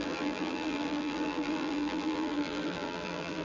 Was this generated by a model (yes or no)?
yes